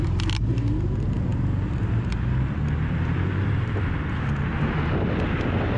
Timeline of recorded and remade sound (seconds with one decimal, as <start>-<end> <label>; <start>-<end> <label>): 0.0-1.3 recorded; 1.3-4.8 remade; 4.8-5.8 recorded